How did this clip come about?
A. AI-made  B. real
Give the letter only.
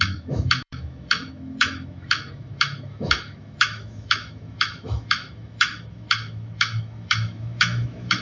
A